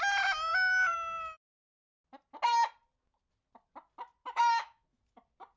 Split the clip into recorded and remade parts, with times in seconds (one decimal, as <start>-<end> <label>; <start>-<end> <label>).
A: 0.0-4.2 recorded; 4.2-5.0 remade; 5.0-5.6 recorded